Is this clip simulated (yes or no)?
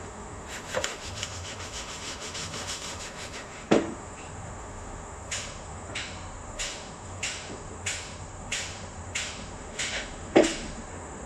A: yes